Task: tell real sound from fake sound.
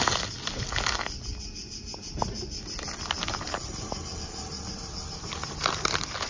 real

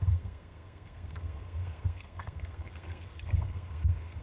fake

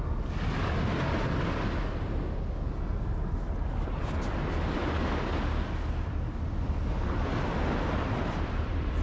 real